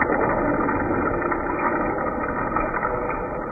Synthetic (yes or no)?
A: no